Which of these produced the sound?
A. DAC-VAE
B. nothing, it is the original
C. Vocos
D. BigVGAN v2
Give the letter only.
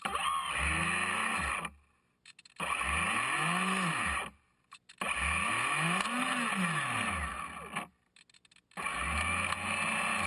B